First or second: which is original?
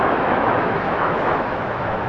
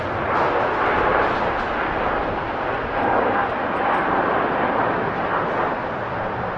second